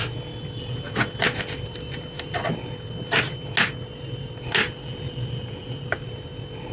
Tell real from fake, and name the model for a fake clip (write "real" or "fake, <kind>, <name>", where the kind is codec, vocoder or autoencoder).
real